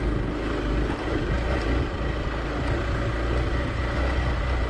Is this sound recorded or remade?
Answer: recorded